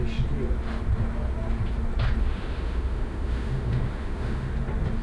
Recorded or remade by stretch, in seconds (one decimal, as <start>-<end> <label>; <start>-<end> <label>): 0.0-2.2 recorded; 2.2-4.5 remade; 4.5-5.0 recorded